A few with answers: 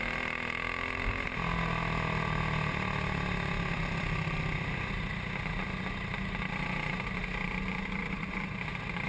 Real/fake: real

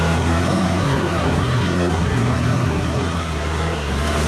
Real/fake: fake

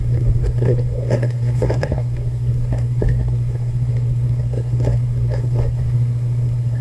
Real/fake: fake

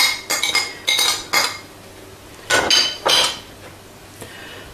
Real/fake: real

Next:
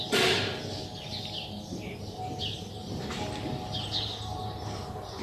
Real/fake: real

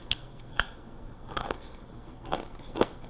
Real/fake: fake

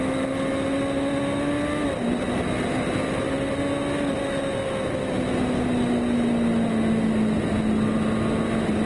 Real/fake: real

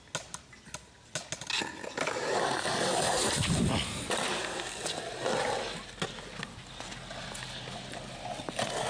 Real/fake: real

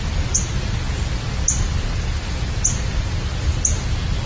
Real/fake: real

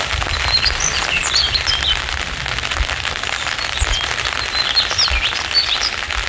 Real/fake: real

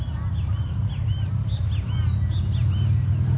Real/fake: real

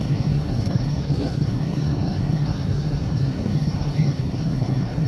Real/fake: fake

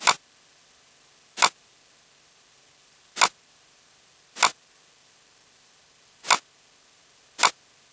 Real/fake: real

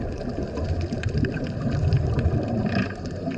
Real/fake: real